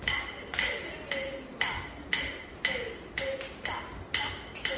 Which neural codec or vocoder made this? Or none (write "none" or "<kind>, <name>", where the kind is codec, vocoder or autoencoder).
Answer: none